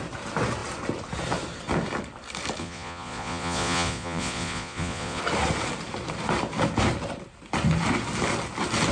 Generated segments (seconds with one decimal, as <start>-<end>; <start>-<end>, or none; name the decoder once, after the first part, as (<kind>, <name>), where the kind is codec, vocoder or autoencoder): 2.6-5.2 (vocoder, Vocos)

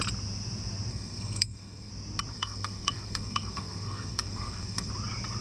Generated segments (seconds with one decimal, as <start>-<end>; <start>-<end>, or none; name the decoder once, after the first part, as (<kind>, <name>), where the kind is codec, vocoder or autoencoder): 0.9-1.9 (codec, SNAC); 2.3-4.9

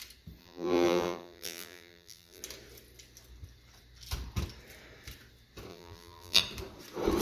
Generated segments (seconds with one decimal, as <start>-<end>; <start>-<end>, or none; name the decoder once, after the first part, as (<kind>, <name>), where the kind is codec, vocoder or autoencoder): 0.4-2.4 (vocoder, BigVGAN v2); 5.7-6.4

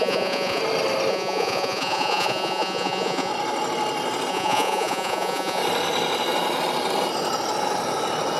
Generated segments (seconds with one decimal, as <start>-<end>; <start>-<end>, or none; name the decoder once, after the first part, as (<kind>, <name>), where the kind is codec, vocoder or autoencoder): 0.0-0.6 (vocoder, Vocos); 1.1-3.3; 4.3-5.6

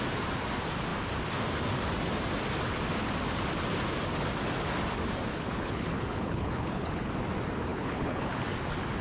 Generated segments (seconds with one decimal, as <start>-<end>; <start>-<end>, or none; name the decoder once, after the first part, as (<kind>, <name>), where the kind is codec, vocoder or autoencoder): 5.3-7.1 (codec, HILCodec); 7.7-8.3

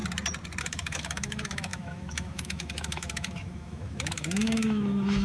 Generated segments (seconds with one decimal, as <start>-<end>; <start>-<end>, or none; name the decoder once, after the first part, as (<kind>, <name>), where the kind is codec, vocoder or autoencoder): 0.6-5.2 (autoencoder, DAC-VAE)

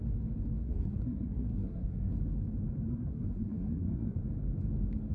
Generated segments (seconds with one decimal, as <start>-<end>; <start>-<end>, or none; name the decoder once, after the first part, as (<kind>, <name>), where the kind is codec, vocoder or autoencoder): 0.6-2.1 (codec, SNAC); 2.9-4.2

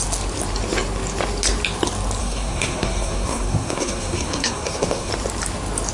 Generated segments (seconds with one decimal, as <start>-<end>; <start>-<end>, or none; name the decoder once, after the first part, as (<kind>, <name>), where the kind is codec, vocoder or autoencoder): 2.2-5.1 (codec, SNAC)